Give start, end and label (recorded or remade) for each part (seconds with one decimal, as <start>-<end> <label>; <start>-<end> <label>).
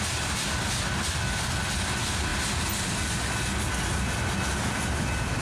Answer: 0.0-5.4 recorded